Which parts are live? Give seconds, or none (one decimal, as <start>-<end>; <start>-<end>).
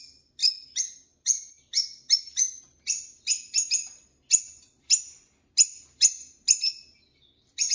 0.0-7.7